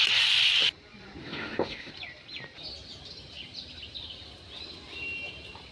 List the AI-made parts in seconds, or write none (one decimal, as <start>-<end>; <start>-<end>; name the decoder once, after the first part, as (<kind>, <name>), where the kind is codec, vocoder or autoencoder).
1.2-1.9 (autoencoder, DAC-VAE)